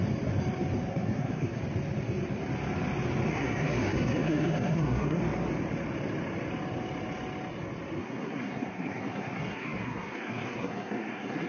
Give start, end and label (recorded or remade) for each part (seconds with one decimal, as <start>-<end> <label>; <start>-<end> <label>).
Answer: 0.0-0.9 recorded; 0.9-1.6 remade; 1.6-3.3 recorded; 3.3-5.2 remade; 5.2-8.0 recorded; 8.0-11.5 remade